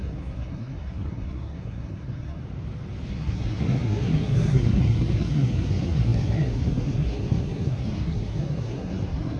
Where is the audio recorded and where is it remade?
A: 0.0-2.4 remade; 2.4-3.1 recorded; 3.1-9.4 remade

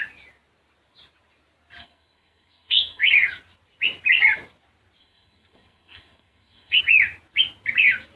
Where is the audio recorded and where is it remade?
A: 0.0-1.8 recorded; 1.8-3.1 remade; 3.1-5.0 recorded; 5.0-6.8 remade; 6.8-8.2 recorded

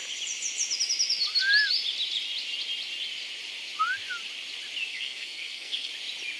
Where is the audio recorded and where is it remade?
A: 0.0-4.9 recorded; 4.9-5.9 remade; 5.9-6.4 recorded